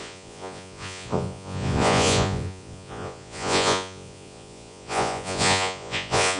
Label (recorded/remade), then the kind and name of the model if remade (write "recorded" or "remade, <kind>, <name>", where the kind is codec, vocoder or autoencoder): remade, vocoder, Vocos